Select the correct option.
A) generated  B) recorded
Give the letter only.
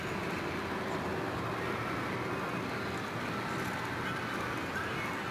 B